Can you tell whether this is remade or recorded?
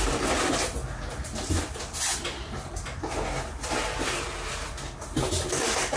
recorded